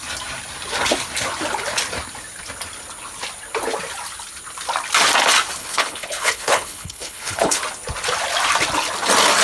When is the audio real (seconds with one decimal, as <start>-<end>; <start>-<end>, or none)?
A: 0.0-5.6; 7.6-9.4